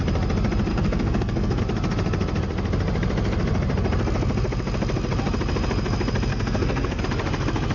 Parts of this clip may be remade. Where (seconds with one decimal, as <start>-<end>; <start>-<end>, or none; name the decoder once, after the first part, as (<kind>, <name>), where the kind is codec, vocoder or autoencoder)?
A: 0.7-1.6 (codec, SNAC); 6.3-7.0